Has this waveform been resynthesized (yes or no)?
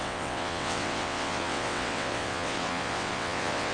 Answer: yes